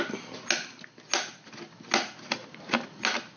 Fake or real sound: real